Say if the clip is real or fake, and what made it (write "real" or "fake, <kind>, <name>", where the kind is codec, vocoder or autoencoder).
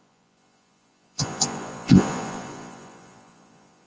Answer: fake, vocoder, Vocos